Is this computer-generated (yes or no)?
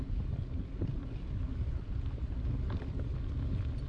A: no